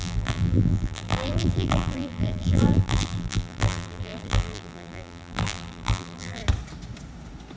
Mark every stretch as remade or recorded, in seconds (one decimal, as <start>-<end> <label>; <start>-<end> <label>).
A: 0.0-6.4 remade; 6.4-7.6 recorded